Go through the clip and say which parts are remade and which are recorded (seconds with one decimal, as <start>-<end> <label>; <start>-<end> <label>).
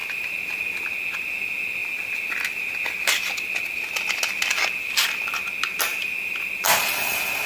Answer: 0.0-0.8 remade; 0.8-5.9 recorded; 5.9-6.8 remade; 6.8-7.5 recorded